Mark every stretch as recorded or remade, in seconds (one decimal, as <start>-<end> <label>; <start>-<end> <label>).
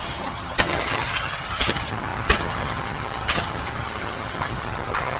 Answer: 0.0-5.2 remade